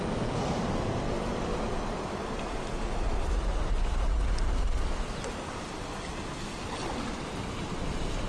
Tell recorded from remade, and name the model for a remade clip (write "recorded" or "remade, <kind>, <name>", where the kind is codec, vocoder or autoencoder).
recorded